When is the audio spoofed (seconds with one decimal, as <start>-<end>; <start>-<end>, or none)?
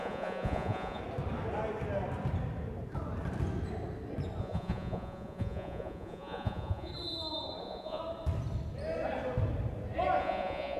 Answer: 0.0-1.0; 4.4-6.9; 7.6-8.0; 10.2-10.8